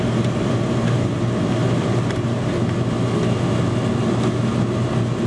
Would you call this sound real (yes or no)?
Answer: yes